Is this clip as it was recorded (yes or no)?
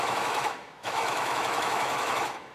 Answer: no